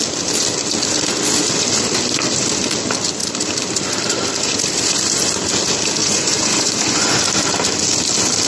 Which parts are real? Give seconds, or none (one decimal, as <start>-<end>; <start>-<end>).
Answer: 0.0-6.0; 7.2-8.5